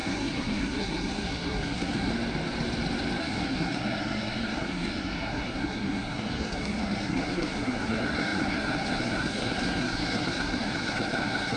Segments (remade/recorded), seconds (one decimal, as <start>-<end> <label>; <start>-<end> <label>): 0.0-2.1 remade; 2.1-3.2 recorded; 3.2-11.6 remade